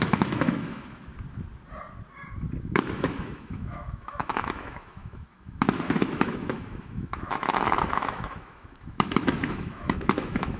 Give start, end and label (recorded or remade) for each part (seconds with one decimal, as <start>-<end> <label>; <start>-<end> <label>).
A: 0.0-1.1 remade; 1.1-2.6 recorded; 2.6-10.6 remade